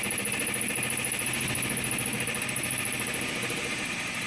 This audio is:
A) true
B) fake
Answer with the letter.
A